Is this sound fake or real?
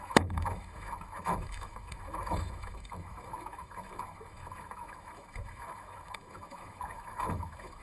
fake